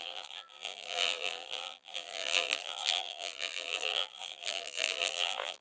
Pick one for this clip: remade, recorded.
remade